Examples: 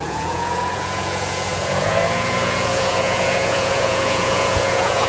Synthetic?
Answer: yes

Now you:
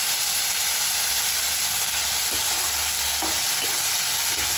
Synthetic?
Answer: no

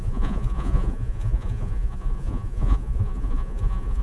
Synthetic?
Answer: yes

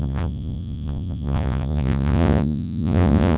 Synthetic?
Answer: yes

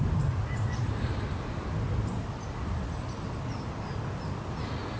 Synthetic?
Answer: no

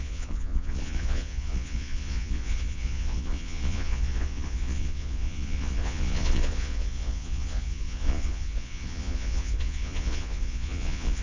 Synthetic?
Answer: yes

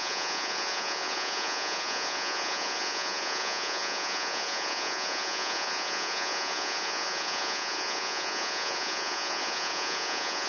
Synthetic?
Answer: yes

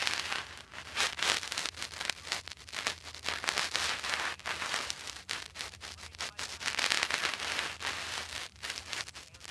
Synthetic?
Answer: no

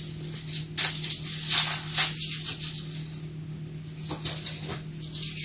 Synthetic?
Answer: no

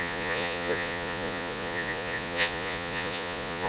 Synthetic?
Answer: yes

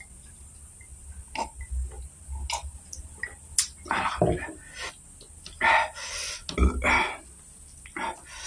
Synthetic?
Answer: no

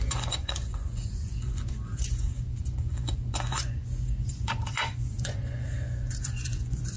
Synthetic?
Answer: yes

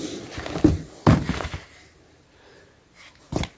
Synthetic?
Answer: no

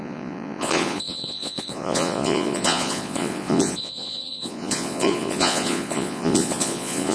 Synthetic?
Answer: yes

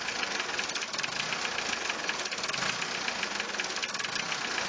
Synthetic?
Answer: no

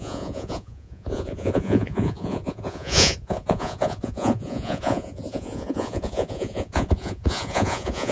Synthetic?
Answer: yes